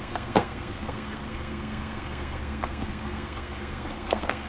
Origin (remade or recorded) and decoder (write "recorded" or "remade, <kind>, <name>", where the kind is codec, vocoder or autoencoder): remade, codec, SNAC